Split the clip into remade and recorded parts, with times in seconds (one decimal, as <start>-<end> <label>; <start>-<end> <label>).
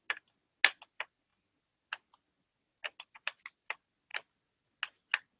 0.0-5.4 recorded